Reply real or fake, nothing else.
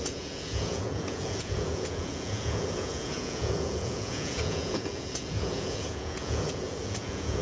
fake